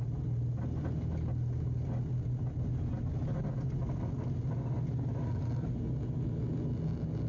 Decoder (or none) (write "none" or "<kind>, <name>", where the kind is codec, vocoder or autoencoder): none